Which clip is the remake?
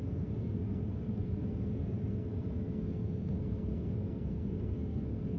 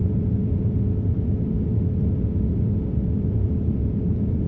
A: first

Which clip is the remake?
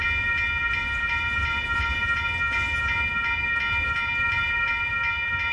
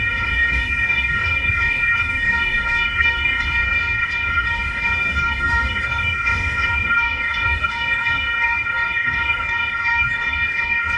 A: second